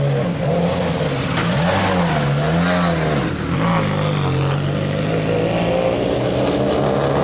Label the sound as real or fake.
real